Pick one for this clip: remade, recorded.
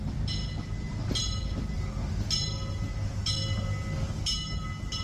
recorded